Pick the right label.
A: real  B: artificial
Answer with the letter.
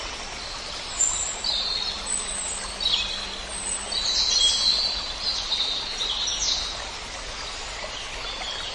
A